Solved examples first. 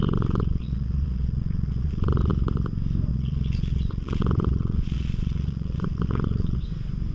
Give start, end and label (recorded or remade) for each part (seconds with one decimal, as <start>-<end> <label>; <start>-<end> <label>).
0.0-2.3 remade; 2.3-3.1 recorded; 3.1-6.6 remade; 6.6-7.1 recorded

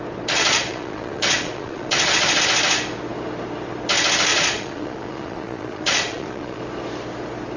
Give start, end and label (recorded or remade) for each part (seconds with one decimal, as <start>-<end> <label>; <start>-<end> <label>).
0.0-0.4 recorded; 0.4-2.4 remade; 2.4-4.3 recorded; 4.3-6.6 remade; 6.6-7.6 recorded

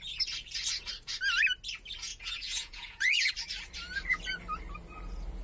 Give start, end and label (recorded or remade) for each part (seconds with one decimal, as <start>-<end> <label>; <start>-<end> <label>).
0.0-2.1 recorded; 2.1-3.3 remade; 3.3-5.4 recorded

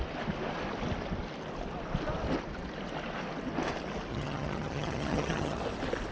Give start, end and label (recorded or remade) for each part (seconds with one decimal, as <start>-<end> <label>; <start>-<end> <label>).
0.0-4.1 recorded; 4.1-5.6 remade; 5.6-6.1 recorded